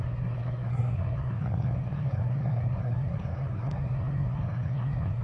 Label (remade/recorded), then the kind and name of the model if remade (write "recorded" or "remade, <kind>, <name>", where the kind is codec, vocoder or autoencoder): remade, codec, SNAC